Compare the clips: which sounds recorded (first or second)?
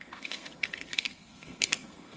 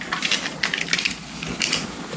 second